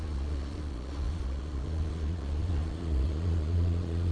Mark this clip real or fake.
fake